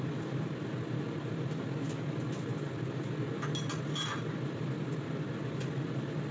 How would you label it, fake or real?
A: real